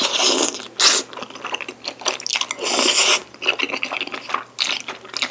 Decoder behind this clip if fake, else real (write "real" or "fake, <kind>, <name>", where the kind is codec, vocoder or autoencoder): real